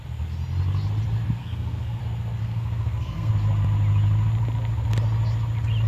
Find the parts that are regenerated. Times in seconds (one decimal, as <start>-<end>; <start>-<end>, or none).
1.4-2.0; 2.4-3.3